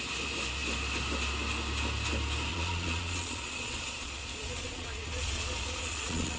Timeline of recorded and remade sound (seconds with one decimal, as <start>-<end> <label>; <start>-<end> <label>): 0.0-2.5 recorded; 2.5-6.4 remade